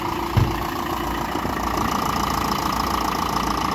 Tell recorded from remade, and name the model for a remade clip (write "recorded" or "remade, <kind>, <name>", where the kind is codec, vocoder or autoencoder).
recorded